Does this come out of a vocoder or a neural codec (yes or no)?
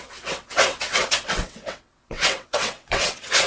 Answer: yes